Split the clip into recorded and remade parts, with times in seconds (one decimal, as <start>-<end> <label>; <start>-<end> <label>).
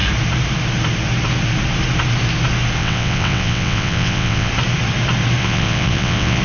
0.0-2.8 recorded; 2.8-4.5 remade; 4.5-5.4 recorded; 5.4-6.4 remade